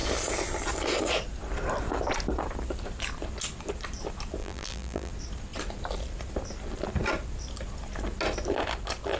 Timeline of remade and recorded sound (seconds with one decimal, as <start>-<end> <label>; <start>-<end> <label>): 0.0-4.4 recorded; 4.4-5.1 remade; 5.1-9.2 recorded